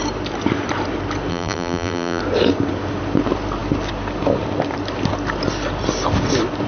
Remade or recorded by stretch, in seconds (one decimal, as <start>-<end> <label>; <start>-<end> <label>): 0.0-1.3 recorded; 1.3-2.2 remade; 2.2-6.7 recorded